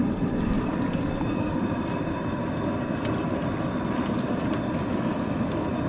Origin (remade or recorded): recorded